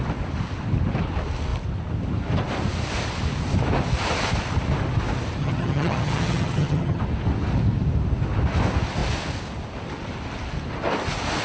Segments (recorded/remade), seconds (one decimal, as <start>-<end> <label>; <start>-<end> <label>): 0.0-5.4 recorded; 5.4-7.0 remade; 7.0-11.4 recorded